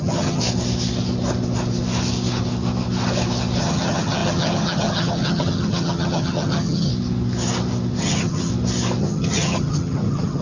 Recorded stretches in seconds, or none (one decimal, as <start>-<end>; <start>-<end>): 0.4-3.6; 6.9-8.0; 8.5-9.0